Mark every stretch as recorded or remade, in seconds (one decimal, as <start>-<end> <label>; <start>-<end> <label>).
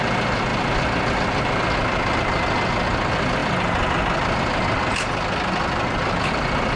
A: 0.0-6.8 recorded